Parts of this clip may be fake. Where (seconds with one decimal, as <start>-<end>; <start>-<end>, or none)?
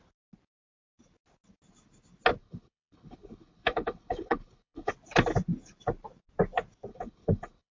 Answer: 2.4-4.9; 6.9-7.7